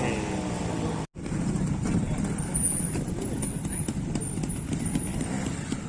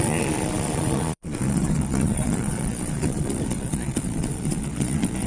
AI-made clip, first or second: second